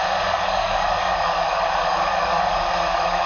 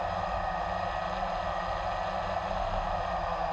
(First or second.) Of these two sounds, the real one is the second